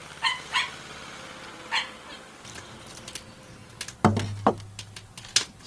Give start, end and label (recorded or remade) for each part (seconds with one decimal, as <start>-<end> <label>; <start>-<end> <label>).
0.0-2.0 remade; 2.0-5.7 recorded